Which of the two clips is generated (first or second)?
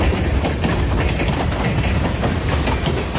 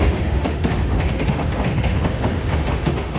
second